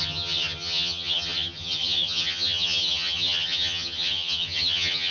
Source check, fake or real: fake